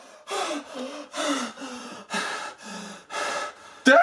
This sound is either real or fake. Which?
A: fake